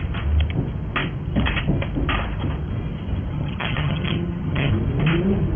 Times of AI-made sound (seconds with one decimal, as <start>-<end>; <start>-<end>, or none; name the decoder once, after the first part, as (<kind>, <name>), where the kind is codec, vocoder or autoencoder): 3.3-4.7 (vocoder, HiFi-GAN)